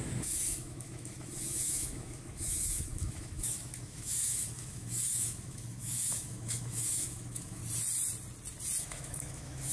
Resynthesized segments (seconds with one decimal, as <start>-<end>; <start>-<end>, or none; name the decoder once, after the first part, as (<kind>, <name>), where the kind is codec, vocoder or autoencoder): 0.0-7.6 (autoencoder, DAC-VAE); 8.8-9.7